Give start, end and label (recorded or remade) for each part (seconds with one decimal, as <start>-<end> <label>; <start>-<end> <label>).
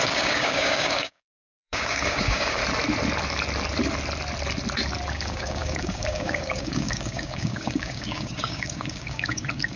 0.0-2.6 remade; 2.6-5.1 recorded; 5.1-9.8 remade